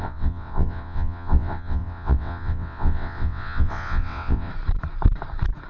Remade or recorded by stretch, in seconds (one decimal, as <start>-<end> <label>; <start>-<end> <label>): 0.0-4.5 remade; 4.5-5.7 recorded